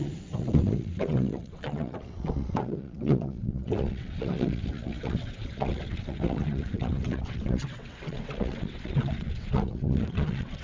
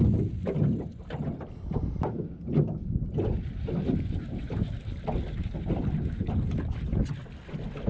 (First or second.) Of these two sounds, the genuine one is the second